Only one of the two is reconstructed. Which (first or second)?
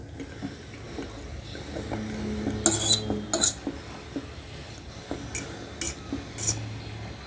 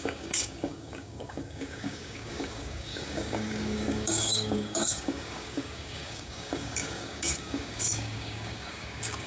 second